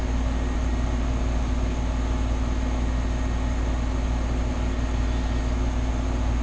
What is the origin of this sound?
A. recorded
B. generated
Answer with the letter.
A